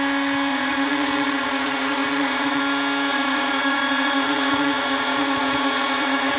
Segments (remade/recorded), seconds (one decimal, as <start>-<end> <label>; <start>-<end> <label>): 0.0-0.5 recorded; 0.5-2.6 remade; 2.6-3.1 recorded; 3.1-6.4 remade